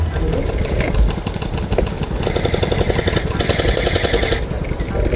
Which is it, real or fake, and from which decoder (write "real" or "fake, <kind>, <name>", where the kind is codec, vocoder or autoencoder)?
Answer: real